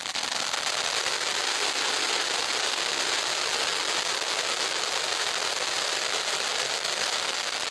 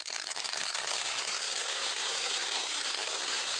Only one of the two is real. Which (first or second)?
first